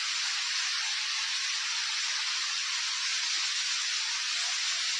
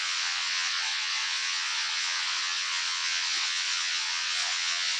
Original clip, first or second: first